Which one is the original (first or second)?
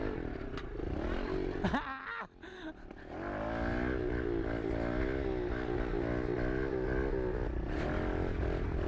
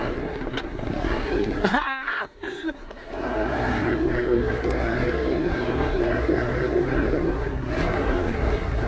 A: first